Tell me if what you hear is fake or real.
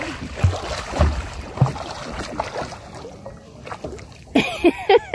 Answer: real